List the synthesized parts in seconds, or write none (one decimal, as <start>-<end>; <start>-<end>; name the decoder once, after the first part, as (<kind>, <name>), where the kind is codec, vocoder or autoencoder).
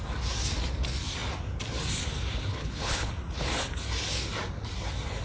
2.5-3.1 (codec, HILCodec)